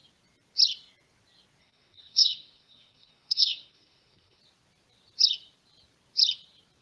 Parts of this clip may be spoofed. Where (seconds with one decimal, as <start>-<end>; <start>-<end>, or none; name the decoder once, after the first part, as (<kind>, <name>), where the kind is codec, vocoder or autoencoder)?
1.6-4.4 (codec, SNAC)